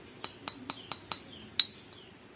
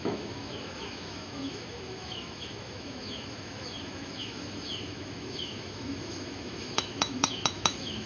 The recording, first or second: first